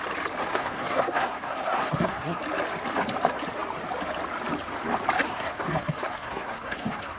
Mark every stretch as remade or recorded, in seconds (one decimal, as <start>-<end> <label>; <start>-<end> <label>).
0.0-0.5 recorded; 0.5-2.4 remade; 2.4-5.3 recorded; 5.3-7.2 remade